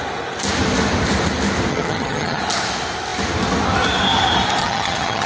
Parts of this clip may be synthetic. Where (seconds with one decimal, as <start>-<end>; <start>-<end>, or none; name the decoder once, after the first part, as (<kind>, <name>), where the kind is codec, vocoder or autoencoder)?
1.7-2.4 (vocoder, HiFi-GAN); 4.6-5.3